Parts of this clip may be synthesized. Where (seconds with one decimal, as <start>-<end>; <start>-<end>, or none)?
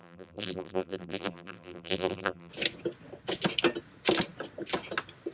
0.0-2.5